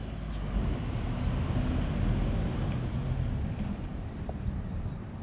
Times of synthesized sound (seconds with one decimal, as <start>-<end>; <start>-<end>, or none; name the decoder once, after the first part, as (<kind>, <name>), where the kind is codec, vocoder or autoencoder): none